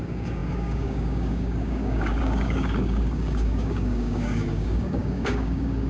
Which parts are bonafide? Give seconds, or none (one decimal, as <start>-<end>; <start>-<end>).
none